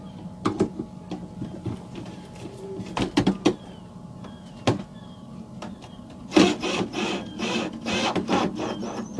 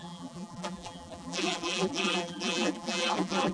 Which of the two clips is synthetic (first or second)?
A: second